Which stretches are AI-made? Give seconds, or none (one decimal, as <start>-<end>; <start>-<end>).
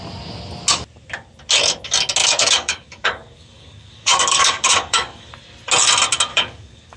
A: 2.2-5.3; 6.3-7.0